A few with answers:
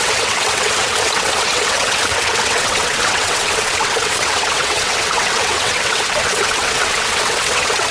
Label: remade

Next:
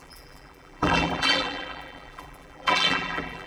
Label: remade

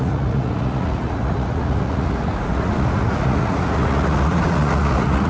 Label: remade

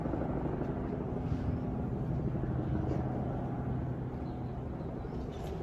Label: recorded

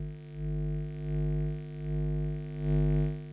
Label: recorded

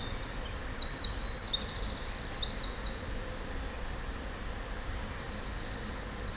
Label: recorded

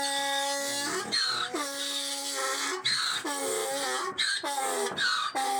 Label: recorded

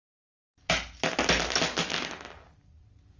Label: recorded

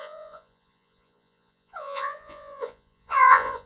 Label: remade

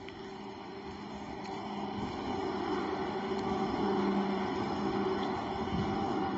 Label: recorded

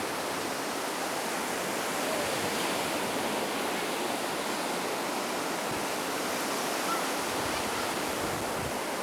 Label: recorded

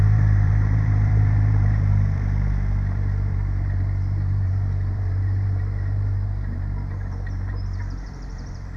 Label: remade